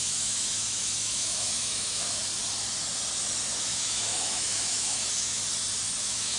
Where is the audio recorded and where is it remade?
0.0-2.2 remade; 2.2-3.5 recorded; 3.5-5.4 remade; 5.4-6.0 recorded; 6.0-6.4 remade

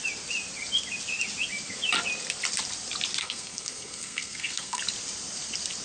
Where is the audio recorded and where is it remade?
0.0-3.2 recorded; 3.2-4.8 remade; 4.8-5.8 recorded